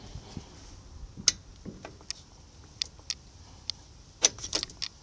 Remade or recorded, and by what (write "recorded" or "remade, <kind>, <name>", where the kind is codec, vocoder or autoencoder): recorded